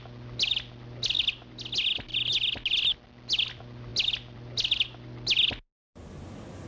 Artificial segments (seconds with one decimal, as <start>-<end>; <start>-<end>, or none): none